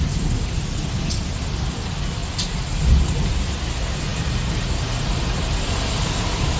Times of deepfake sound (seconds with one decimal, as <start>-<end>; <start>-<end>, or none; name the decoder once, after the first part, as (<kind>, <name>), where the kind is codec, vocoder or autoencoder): none